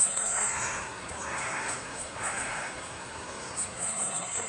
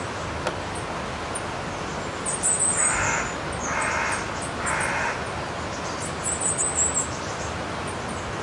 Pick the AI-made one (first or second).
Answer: first